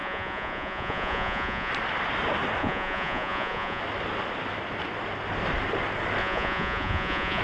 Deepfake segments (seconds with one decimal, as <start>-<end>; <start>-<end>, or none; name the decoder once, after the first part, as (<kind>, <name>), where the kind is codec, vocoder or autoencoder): 0.0-1.7 (vocoder, Vocos); 2.6-3.8; 6.2-7.4